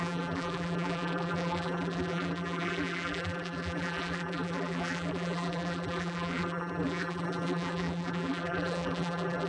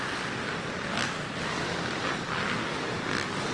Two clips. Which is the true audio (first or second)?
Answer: second